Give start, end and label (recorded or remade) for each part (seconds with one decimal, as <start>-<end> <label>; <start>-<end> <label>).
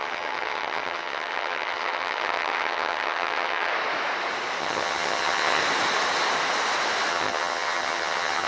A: 0.0-3.7 remade; 3.7-4.6 recorded; 4.6-5.6 remade; 5.6-7.1 recorded; 7.1-8.5 remade